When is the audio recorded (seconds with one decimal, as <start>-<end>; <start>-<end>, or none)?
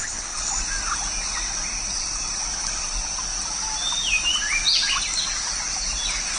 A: 0.5-6.4